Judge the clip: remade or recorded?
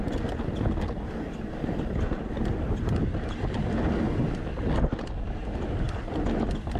recorded